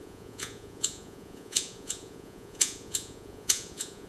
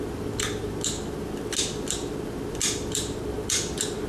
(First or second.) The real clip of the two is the second